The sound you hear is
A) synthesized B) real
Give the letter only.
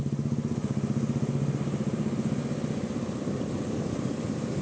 B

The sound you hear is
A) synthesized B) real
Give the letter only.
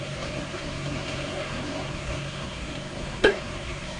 A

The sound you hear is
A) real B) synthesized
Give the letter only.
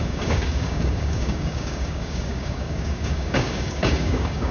B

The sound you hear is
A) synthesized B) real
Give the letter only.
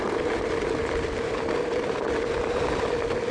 B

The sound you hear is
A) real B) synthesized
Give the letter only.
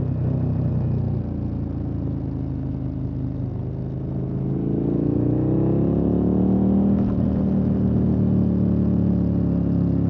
A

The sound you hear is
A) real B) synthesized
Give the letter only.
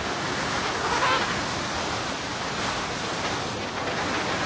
A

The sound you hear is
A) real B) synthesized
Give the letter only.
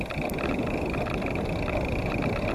A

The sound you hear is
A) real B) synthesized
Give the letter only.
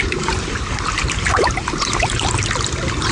A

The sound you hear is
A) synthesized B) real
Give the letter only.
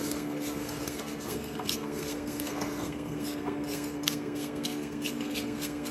A